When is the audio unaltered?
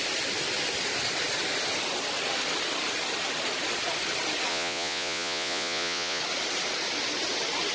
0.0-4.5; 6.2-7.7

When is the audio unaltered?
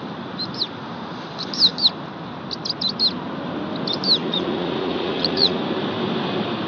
0.0-4.2; 5.6-6.7